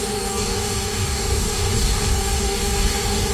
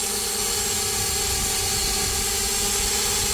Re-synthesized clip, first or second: first